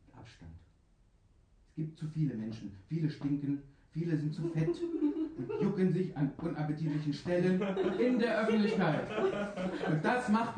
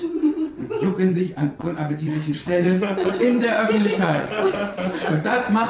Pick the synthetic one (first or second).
second